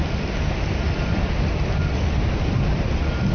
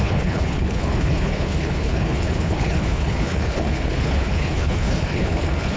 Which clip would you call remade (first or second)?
second